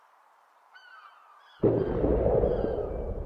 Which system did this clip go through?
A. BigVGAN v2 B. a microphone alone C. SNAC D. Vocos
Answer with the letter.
A